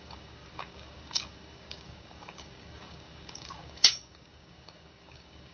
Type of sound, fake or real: fake